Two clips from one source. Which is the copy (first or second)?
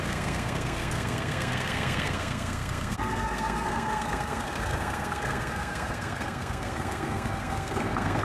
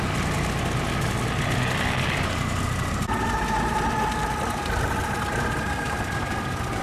first